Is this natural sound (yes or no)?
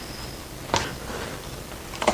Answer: yes